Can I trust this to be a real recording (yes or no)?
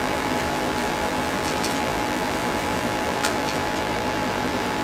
no